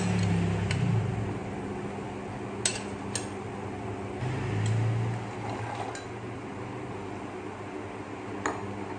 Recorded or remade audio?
recorded